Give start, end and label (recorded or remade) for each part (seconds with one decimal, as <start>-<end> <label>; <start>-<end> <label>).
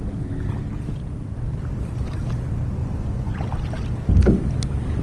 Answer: 0.0-2.8 recorded; 2.8-3.3 remade; 3.3-5.0 recorded